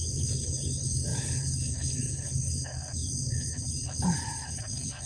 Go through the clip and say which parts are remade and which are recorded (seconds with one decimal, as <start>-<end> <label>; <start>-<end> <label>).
0.0-5.1 remade